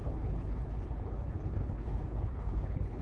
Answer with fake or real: fake